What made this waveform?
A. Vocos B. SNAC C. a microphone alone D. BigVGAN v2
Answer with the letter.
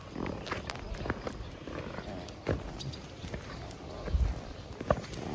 C